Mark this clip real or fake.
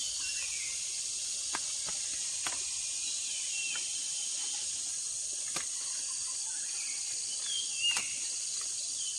real